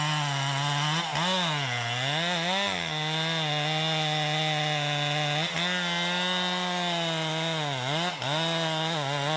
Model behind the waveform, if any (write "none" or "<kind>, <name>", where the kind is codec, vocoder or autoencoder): none